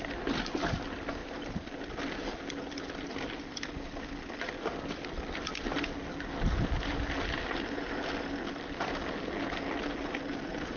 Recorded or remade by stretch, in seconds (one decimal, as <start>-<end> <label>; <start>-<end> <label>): 0.0-10.8 recorded